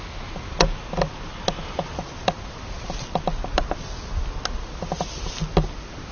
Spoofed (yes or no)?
no